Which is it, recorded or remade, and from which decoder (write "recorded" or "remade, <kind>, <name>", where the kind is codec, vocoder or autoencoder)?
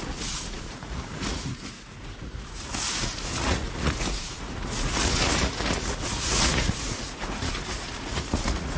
remade, vocoder, Vocos